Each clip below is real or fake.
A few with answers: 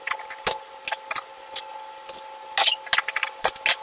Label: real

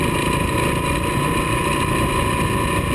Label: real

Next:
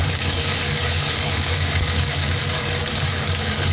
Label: fake